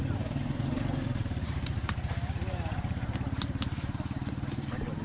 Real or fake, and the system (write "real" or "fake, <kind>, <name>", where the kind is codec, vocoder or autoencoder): fake, vocoder, BigVGAN v2